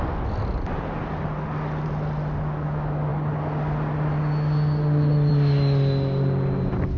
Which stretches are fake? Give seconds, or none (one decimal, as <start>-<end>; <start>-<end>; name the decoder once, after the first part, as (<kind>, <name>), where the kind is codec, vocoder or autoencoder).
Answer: none